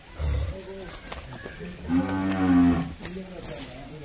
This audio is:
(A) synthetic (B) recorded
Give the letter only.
B